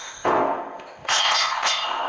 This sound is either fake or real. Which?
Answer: fake